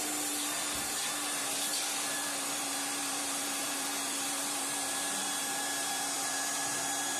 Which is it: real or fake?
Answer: fake